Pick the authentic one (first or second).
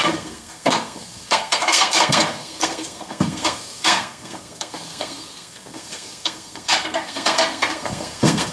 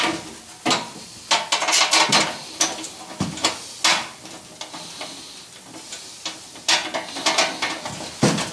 second